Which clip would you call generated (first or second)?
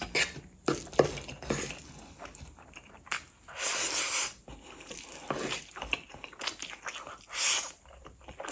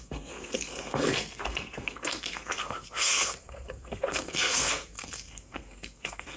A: second